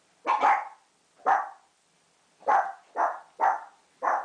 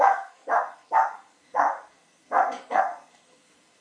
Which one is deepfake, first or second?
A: second